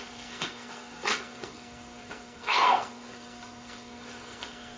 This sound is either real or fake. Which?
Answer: fake